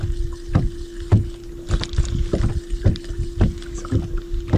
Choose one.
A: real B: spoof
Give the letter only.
A